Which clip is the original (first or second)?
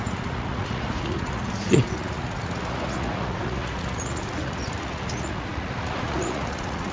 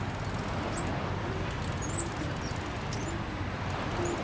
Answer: second